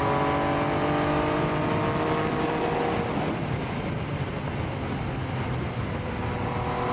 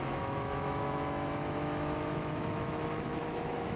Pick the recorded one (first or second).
first